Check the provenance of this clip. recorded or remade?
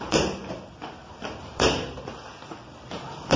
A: recorded